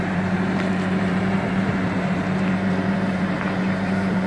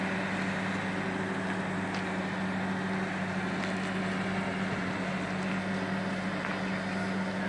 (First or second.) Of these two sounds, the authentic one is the second